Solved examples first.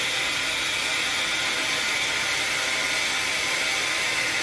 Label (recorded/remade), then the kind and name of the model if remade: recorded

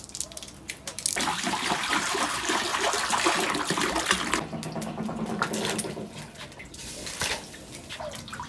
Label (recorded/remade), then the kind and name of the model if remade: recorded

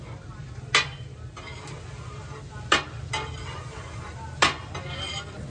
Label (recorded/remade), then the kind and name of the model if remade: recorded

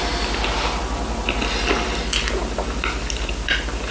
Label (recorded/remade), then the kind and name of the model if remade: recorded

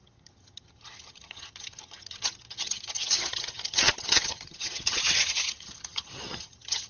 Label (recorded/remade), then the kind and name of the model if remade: remade, vocoder, HiFi-GAN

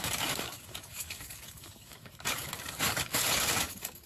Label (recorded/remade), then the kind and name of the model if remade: remade, codec, DAC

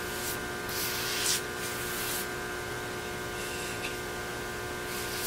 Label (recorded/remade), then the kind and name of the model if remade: recorded